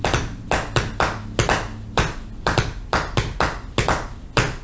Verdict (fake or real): real